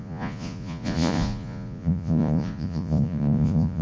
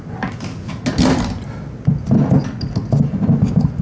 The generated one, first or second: first